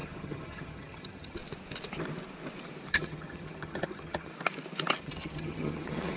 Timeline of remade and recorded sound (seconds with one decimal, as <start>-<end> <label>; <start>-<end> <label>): 0.0-1.4 remade; 1.4-2.9 recorded; 2.9-4.3 remade; 4.3-5.0 recorded; 5.0-6.2 remade